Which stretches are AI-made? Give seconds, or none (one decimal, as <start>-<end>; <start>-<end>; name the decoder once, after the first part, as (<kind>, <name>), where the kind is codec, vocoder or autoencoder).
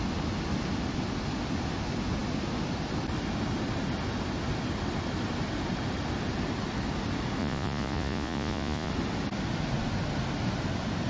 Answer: 7.4-8.9 (vocoder, Vocos)